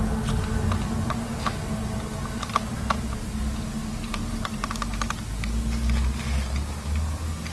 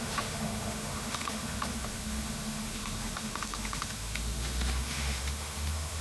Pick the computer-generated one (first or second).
second